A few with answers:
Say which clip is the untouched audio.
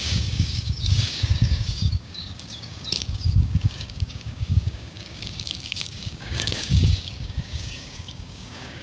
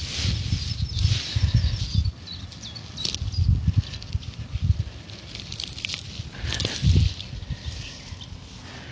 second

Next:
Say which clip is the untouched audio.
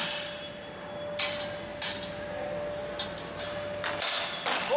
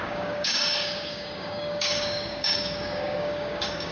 first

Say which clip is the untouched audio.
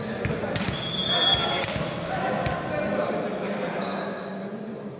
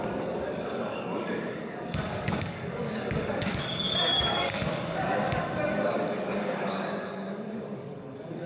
first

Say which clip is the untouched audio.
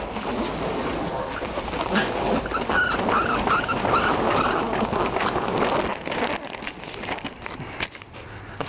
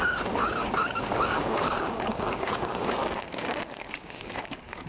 first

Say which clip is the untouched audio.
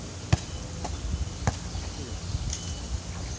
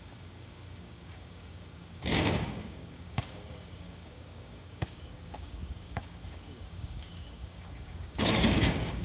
first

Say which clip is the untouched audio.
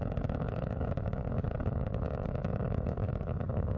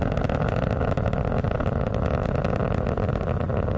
second